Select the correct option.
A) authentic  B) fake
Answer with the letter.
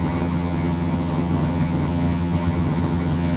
B